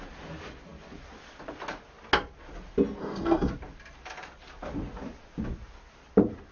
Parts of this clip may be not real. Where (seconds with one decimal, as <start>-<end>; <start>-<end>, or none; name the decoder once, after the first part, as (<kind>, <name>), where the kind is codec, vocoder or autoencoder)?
3.0-3.5 (codec, SNAC)